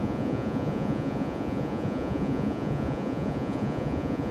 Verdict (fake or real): fake